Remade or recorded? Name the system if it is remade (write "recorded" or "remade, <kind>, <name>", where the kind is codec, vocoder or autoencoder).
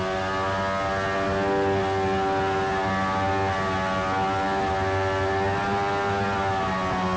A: recorded